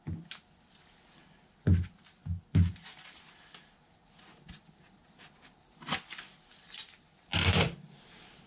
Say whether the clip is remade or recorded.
recorded